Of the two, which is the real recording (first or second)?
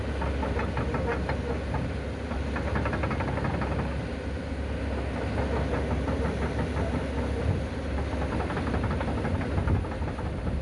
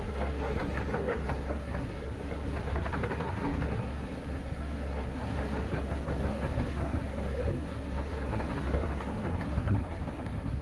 first